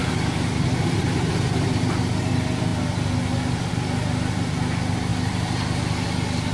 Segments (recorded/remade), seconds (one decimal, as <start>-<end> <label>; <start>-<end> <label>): 0.0-6.5 recorded